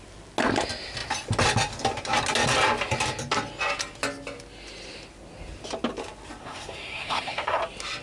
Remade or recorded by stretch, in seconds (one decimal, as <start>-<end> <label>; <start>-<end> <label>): 0.0-6.4 recorded; 6.4-7.6 remade; 7.6-8.0 recorded